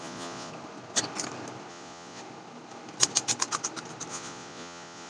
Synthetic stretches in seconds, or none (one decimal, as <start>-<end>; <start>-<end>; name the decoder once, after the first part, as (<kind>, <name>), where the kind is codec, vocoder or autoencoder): 0.0-0.5 (vocoder, Vocos); 1.7-2.2; 4.1-5.1